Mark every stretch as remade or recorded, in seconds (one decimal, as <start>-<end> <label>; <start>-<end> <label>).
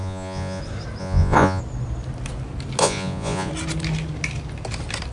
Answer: 0.0-0.6 remade; 0.6-1.0 recorded; 1.0-1.6 remade; 1.6-2.8 recorded; 2.8-3.5 remade; 3.5-5.1 recorded